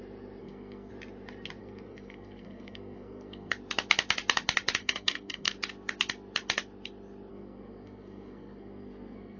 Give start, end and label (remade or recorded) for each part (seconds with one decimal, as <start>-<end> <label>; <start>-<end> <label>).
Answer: 0.0-0.4 recorded; 0.4-0.9 remade; 0.9-1.6 recorded; 1.6-3.5 remade; 3.5-4.8 recorded; 4.8-5.5 remade; 5.5-7.3 recorded; 7.3-9.4 remade